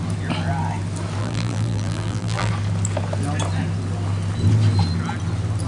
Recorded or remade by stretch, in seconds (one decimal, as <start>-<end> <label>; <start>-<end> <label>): 0.0-1.2 recorded; 1.2-2.5 remade; 2.5-5.7 recorded